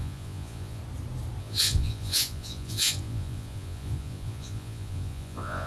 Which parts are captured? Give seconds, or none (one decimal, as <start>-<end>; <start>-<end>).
0.8-1.4